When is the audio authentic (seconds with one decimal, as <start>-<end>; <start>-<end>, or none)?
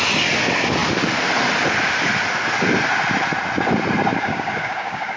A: 0.0-4.1